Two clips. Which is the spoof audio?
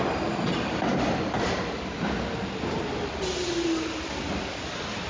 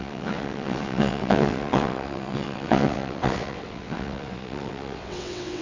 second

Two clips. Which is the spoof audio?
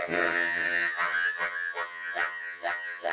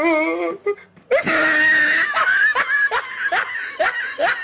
first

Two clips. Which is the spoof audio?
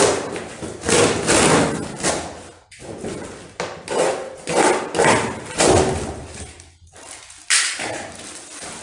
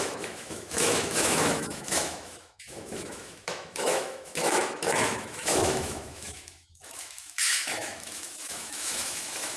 second